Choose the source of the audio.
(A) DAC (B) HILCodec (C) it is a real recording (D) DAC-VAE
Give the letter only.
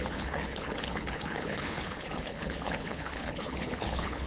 B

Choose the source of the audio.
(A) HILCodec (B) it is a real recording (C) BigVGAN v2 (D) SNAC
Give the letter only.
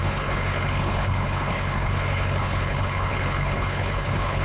A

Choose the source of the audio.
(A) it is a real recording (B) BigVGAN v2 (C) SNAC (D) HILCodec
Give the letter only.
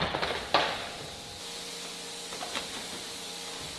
A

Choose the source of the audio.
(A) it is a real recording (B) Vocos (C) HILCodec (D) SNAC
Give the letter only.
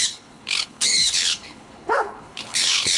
C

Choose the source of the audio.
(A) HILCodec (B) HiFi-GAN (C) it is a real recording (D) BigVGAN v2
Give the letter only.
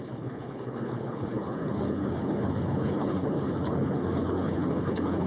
A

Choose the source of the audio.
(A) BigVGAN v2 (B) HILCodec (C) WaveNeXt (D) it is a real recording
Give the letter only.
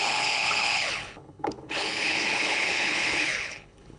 B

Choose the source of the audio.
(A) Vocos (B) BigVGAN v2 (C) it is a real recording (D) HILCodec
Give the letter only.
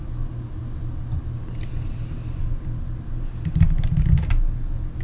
C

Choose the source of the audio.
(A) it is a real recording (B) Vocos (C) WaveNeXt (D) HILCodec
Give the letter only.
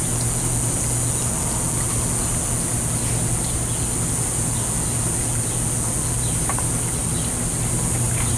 A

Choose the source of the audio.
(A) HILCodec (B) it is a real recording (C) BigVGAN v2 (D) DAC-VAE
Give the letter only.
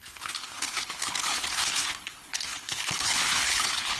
A